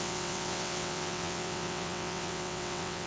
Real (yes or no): no